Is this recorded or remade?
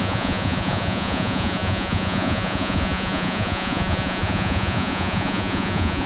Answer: remade